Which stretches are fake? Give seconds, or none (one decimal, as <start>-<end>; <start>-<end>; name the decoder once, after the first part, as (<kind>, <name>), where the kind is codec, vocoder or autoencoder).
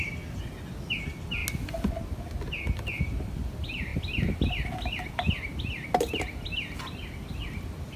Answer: 3.9-5.1 (vocoder, BigVGAN v2)